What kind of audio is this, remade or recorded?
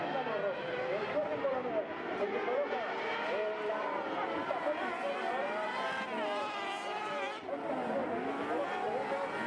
recorded